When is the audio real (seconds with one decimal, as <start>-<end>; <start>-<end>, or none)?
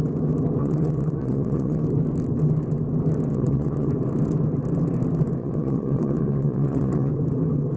0.0-0.6; 1.8-3.3; 3.9-5.4; 7.1-7.8